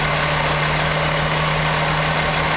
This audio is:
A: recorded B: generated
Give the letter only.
A